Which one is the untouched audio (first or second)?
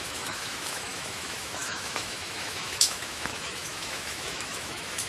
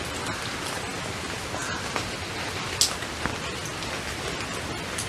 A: second